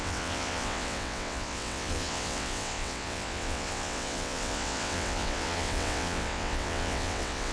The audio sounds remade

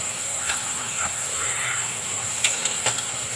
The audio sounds remade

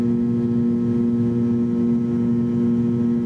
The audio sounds recorded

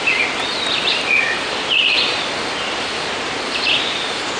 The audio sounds remade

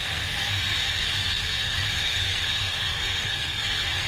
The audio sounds remade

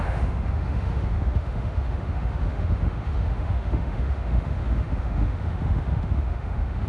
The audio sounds remade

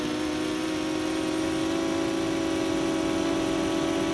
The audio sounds recorded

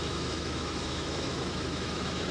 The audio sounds remade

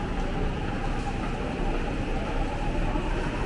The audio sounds recorded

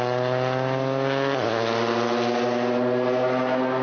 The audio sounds recorded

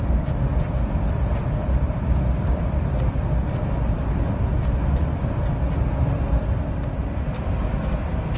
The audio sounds remade